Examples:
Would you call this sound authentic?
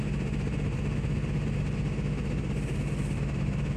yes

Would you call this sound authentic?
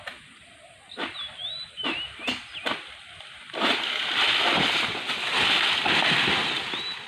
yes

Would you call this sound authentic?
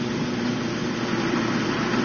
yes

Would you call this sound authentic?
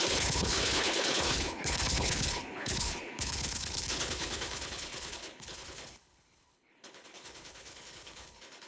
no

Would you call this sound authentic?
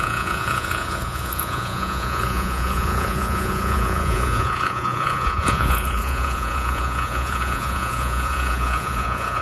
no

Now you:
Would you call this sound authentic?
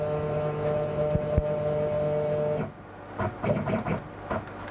yes